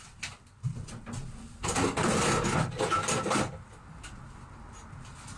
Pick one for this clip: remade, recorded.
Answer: recorded